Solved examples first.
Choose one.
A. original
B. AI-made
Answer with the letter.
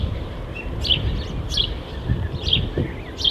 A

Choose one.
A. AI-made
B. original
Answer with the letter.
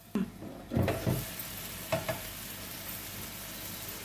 B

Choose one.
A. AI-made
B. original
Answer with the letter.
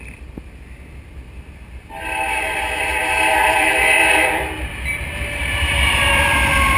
A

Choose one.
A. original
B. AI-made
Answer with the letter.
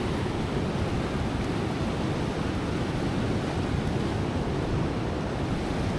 A